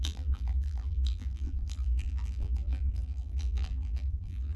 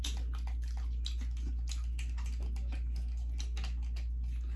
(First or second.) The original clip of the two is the second